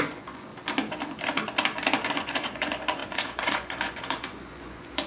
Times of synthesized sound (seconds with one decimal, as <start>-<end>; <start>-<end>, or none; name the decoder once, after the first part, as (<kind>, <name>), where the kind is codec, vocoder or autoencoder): 0.0-0.5 (vocoder, Vocos); 2.1-5.1